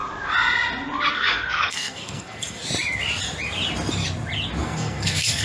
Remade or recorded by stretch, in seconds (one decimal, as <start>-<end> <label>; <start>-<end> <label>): 0.0-1.1 recorded; 1.1-2.6 remade; 2.6-4.6 recorded; 4.6-5.4 remade